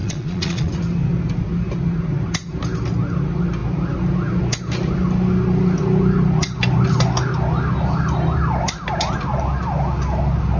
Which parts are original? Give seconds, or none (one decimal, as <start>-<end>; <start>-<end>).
0.7-10.6